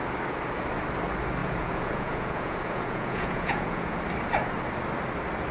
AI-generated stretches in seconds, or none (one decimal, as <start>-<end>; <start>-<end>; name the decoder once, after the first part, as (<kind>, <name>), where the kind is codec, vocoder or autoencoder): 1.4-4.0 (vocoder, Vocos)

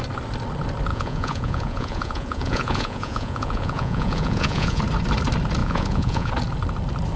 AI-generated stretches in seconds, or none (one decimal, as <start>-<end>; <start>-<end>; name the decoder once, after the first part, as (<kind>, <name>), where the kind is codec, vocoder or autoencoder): 0.9-4.8 (vocoder, Vocos); 5.6-6.3

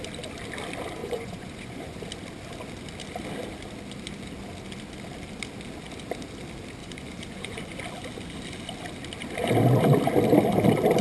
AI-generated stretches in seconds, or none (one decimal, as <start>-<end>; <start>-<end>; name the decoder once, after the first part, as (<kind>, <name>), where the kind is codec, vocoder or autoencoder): 1.0-2.0 (vocoder, Vocos); 6.8-7.8